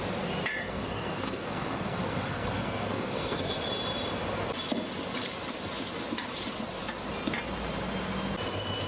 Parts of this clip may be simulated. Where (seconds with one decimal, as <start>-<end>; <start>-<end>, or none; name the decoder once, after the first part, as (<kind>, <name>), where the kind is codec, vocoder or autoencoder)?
0.6-3.7 (codec, SNAC)

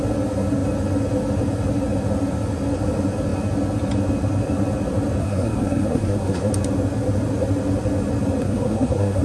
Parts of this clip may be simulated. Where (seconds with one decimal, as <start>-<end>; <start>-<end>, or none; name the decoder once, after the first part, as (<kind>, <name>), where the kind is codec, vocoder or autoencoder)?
5.2-6.5 (codec, SNAC); 8.4-9.2

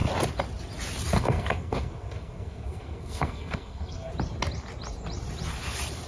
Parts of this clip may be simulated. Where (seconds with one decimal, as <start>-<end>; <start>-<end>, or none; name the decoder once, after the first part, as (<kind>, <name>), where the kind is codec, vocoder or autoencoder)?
1.1-4.1 (codec, SNAC)

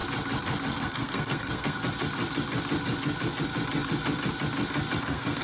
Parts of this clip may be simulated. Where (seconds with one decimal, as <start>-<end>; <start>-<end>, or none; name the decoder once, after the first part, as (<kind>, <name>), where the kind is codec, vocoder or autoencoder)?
0.8-1.8 (codec, SNAC); 5.0-5.4